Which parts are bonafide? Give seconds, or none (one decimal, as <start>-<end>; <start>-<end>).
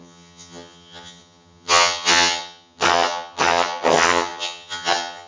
none